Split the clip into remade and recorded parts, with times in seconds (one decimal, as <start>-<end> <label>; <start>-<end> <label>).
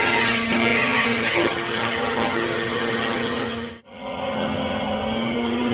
0.0-5.7 remade